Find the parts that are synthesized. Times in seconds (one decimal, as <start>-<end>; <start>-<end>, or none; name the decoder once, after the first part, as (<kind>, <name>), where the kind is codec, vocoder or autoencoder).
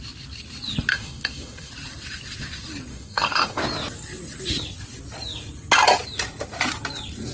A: 0.9-1.7 (autoencoder, DAC-VAE); 2.9-3.6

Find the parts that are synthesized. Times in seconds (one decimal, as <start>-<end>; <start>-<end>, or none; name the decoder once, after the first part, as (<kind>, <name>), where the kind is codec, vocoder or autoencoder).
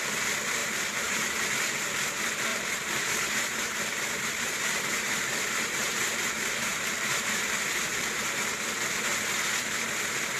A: 0.6-1.5 (vocoder, BigVGAN v2); 2.5-6.3; 6.7-8.2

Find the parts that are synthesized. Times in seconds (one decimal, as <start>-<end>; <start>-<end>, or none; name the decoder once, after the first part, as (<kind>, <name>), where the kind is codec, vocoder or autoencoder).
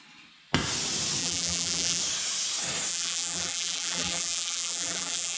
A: 1.2-2.0 (vocoder, BigVGAN v2); 2.9-5.4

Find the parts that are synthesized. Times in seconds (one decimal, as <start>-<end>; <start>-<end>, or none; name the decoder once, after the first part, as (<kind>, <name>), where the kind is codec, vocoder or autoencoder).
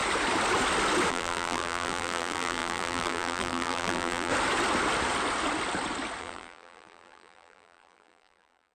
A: 1.1-4.3 (vocoder, BigVGAN v2); 6.2-8.7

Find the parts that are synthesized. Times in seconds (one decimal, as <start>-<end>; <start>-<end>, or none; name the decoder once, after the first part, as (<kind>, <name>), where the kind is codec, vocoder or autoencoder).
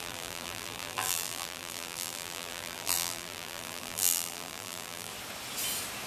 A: 0.0-5.1 (vocoder, BigVGAN v2)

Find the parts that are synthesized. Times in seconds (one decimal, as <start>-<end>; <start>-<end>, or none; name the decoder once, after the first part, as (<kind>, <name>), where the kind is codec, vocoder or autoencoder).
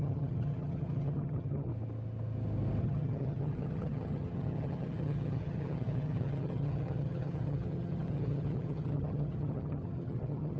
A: 0.0-1.7 (vocoder, HiFi-GAN); 2.8-10.6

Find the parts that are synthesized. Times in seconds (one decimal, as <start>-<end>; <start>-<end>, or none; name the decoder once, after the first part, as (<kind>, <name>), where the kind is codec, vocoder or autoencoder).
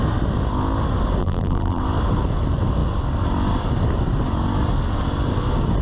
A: 1.2-1.8 (vocoder, BigVGAN v2)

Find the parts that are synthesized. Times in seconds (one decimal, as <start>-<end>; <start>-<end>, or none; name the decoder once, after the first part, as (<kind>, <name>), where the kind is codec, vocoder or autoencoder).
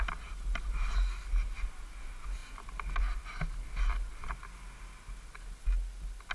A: none